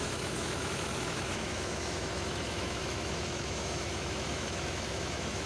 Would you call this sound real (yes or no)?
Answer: no